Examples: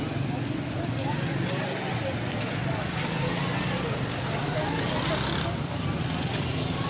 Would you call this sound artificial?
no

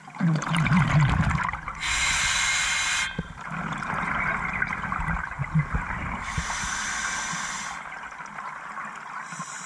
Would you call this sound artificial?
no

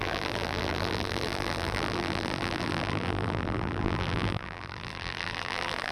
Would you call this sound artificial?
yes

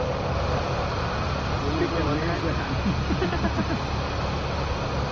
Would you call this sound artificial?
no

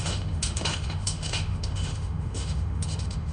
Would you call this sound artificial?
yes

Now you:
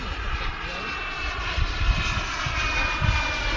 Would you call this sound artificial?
no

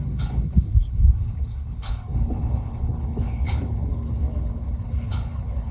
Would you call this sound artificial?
yes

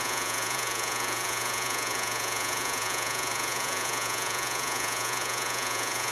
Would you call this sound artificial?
yes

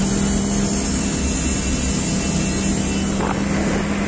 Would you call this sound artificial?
no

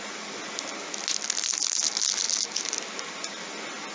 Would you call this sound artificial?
no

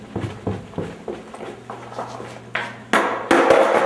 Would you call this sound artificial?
no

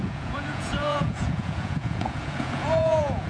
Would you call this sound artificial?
yes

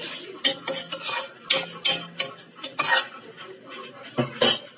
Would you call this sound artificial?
no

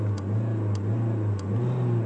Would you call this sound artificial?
no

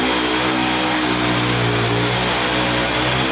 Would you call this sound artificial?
no